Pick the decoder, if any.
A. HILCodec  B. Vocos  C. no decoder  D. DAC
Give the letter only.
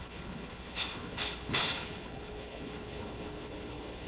A